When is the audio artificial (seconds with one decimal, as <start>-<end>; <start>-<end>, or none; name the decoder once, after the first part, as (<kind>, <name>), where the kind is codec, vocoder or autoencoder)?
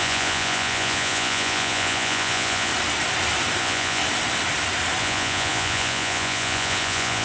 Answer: 0.0-2.7 (vocoder, Vocos); 3.6-4.0; 5.0-7.2